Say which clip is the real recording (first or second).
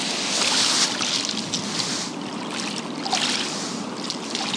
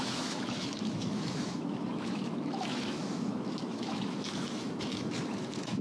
first